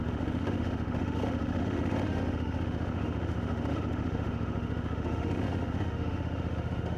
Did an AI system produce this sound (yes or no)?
yes